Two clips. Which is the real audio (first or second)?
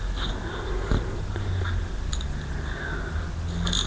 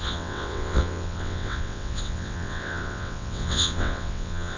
first